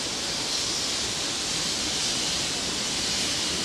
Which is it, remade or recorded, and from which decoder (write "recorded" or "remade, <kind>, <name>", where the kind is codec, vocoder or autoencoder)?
recorded